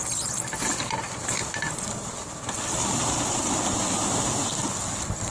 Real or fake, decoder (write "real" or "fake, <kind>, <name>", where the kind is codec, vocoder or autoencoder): real